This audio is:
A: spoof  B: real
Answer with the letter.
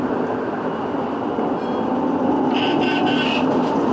B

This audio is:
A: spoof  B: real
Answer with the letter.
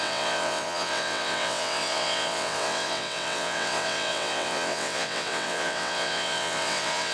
A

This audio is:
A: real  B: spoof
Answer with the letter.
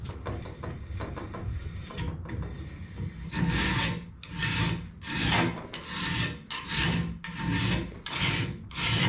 A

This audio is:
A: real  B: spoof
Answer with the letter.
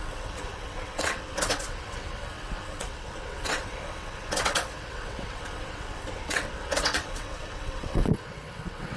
B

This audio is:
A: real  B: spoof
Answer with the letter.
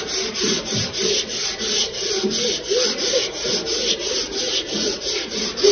A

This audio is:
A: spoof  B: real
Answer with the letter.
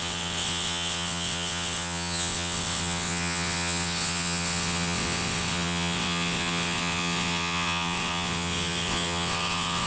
A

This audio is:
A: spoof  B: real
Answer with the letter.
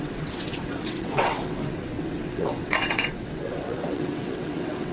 A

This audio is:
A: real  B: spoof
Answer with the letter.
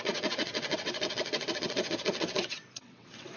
B